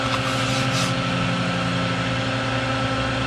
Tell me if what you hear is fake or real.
real